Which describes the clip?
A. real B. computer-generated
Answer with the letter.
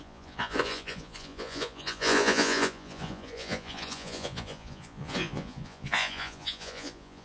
B